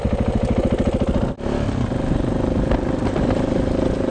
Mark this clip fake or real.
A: real